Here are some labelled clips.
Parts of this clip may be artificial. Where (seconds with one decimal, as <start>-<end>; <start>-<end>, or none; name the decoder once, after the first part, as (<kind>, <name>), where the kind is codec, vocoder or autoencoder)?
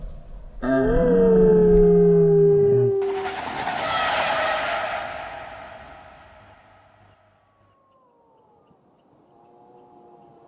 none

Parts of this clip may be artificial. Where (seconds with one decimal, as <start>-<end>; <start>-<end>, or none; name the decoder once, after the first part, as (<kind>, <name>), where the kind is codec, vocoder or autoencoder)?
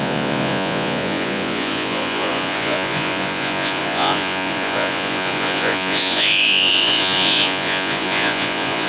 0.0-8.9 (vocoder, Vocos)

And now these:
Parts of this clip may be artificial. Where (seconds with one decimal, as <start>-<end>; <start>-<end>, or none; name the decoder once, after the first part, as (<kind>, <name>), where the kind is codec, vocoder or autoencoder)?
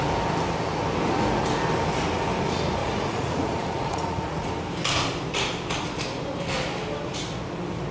2.8-4.5 (vocoder, Vocos)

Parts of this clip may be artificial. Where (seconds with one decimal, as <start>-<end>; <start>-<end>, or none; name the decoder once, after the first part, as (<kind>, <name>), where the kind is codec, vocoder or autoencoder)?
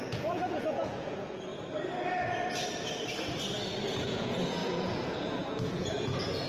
0.0-1.5 (vocoder, Vocos); 3.9-6.5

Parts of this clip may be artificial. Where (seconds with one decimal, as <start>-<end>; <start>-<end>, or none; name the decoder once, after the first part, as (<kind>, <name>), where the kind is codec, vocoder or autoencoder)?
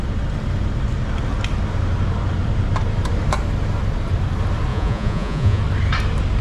4.7-5.6 (vocoder, Vocos)